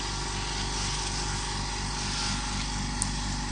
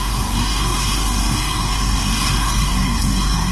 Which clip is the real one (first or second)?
first